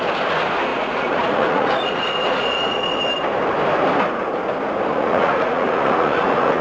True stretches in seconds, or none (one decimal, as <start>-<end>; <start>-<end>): 0.0-0.7; 2.9-4.9